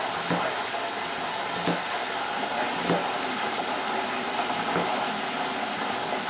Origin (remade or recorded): recorded